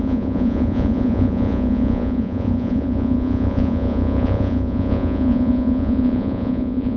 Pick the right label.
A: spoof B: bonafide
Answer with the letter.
A